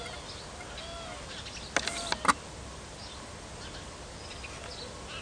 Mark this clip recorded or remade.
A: recorded